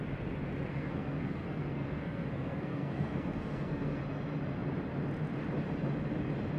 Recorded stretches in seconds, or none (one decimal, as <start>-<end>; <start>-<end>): 0.0-0.7; 4.0-6.6